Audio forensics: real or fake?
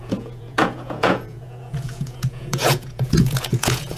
fake